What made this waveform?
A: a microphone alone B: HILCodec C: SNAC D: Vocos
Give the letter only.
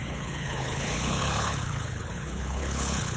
B